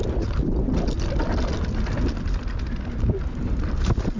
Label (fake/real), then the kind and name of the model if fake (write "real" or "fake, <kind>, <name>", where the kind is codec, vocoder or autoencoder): real